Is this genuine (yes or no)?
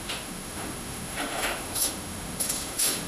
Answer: no